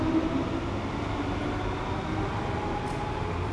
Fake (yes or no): no